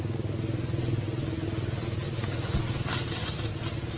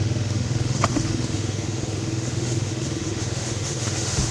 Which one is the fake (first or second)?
second